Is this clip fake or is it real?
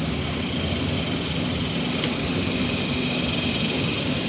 real